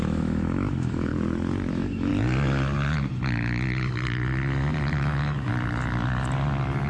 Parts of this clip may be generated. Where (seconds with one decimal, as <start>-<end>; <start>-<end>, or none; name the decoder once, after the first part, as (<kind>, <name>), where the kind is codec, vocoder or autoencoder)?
0.0-1.1 (autoencoder, DAC-VAE); 1.7-2.1; 4.9-5.5